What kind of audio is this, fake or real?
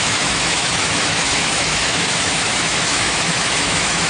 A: fake